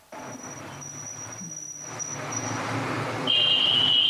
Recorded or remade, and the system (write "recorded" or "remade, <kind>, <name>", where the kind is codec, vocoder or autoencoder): recorded